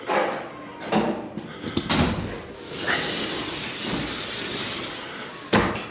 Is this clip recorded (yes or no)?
yes